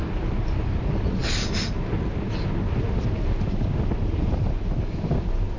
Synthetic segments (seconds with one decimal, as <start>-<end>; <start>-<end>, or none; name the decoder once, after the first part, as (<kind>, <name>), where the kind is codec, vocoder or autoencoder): none